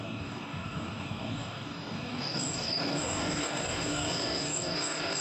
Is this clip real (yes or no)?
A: no